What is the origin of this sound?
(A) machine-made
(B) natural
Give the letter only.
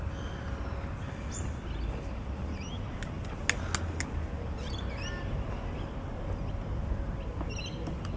B